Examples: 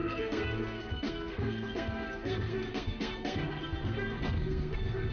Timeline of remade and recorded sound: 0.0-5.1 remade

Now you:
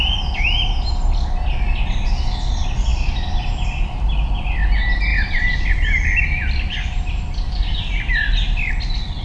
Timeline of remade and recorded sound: 0.0-9.2 recorded

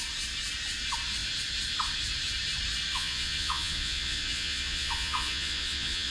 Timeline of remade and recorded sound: 0.0-2.9 recorded; 2.9-6.1 remade